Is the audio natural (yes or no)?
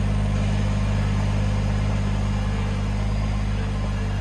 yes